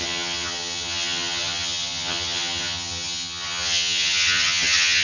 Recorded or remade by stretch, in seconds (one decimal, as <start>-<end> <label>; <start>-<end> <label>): 0.0-5.0 remade